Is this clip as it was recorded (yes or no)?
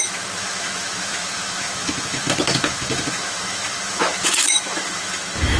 no